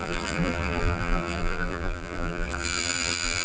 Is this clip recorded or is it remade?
remade